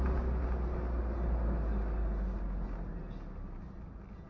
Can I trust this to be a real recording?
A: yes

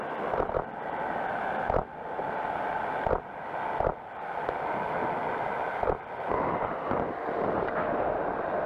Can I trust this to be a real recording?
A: yes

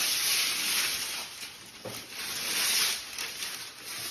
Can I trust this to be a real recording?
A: yes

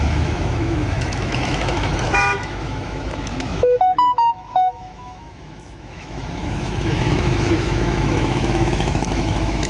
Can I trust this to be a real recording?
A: no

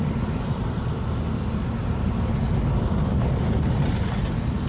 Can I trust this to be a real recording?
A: yes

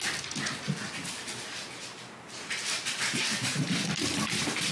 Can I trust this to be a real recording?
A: yes